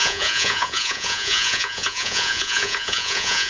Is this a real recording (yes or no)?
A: no